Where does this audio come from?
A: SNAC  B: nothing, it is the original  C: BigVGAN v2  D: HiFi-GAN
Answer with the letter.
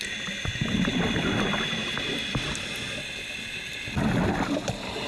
B